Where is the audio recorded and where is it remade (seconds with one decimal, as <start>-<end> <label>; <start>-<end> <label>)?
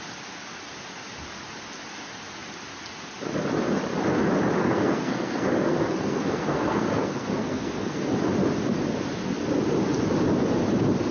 0.0-4.6 recorded; 4.6-8.1 remade; 8.1-11.1 recorded